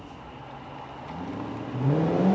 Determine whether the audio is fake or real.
real